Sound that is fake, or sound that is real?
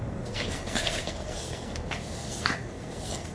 fake